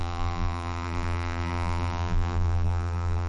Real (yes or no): no